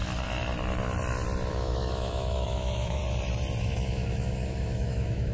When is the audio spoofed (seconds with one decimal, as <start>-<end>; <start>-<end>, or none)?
1.5-3.0; 3.6-5.3